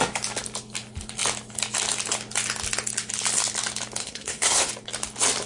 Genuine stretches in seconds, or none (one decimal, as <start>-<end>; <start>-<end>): 0.0-4.0; 4.7-5.5